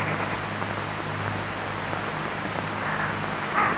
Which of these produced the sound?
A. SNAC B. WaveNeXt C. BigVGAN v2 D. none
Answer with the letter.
D